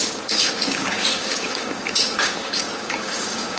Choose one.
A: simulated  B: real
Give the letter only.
A